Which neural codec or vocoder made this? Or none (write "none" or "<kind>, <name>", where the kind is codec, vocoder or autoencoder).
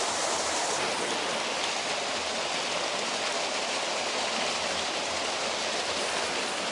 none